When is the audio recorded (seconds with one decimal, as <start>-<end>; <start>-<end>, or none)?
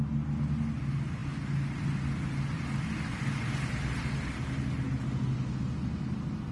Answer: 0.0-6.5